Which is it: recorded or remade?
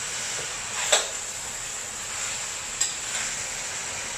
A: recorded